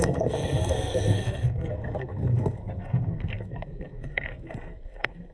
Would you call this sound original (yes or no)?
no